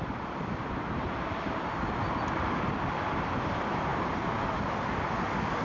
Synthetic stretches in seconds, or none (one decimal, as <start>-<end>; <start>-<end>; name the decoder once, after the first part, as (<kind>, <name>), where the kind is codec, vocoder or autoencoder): none